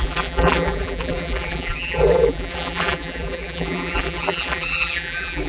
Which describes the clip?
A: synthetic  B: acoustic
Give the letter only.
A